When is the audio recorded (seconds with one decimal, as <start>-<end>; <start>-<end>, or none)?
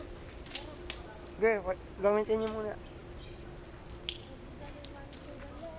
0.0-5.8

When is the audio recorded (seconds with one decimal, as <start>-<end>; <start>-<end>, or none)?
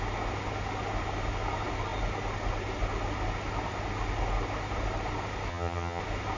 0.0-5.5; 6.0-6.4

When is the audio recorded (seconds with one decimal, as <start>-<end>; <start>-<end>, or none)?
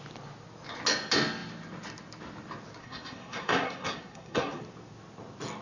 0.0-2.8; 4.6-5.6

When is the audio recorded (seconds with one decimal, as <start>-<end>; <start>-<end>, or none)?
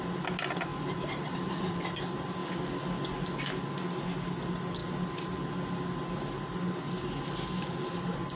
0.0-0.7; 2.0-8.4